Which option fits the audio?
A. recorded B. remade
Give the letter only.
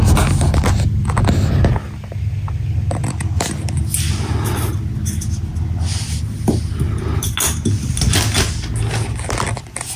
A